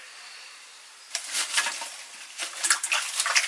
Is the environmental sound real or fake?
fake